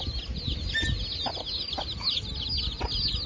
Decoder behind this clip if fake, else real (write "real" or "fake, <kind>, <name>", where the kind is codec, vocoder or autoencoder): real